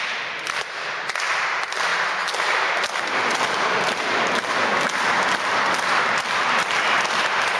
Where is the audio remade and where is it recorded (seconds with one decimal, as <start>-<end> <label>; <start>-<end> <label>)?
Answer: 0.0-1.9 remade; 1.9-3.0 recorded; 3.0-7.6 remade